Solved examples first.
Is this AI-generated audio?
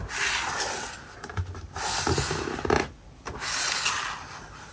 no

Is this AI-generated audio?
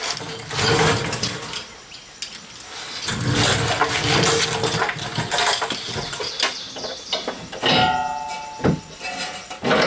no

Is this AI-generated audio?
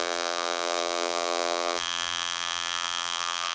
yes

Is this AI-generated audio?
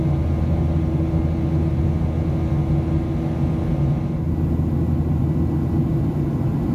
no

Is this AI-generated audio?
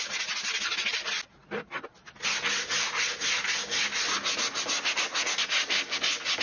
no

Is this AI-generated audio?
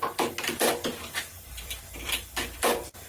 yes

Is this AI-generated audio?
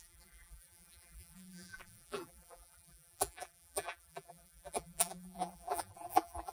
yes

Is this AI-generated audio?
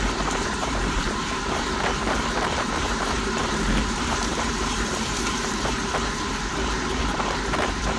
yes